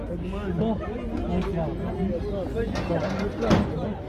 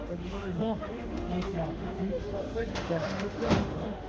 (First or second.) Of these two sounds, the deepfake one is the second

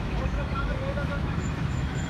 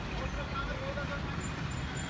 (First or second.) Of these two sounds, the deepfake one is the first